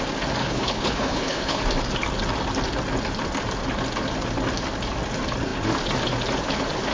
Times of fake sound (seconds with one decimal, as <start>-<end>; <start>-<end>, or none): 0.4-1.6